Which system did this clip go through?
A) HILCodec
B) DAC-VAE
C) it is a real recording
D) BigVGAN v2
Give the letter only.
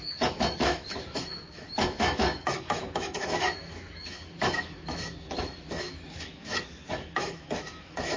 B